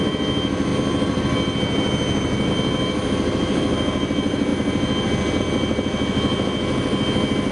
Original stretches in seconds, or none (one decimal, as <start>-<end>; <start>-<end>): 0.0-7.5